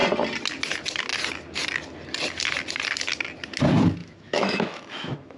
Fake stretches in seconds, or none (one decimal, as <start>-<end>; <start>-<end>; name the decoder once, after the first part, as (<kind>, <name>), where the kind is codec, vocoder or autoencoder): 4.0-5.4 (autoencoder, DAC-VAE)